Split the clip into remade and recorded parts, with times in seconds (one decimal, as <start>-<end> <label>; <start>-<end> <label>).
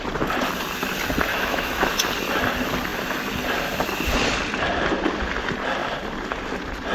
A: 0.0-1.3 recorded; 1.3-1.9 remade; 1.9-6.9 recorded